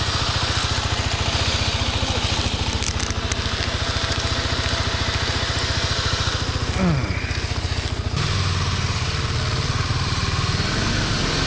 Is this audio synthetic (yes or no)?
no